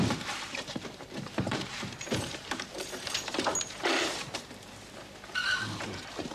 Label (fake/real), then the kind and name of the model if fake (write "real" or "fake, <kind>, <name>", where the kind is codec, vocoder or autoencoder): fake, vocoder, BigVGAN v2